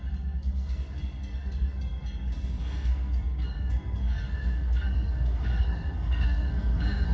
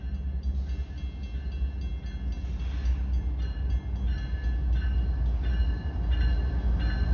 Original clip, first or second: second